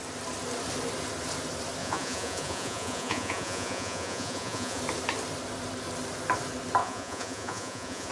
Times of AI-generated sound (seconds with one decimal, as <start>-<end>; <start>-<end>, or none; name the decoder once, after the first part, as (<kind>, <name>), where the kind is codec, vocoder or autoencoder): 1.8-4.8 (vocoder, Vocos); 6.8-8.1